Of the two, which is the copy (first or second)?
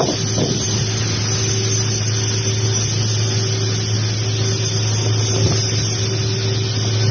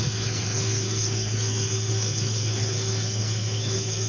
second